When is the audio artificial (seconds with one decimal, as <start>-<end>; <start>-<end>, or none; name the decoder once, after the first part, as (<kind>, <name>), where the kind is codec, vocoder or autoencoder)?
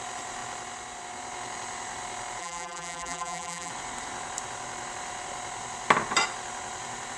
2.4-3.7 (vocoder, BigVGAN v2)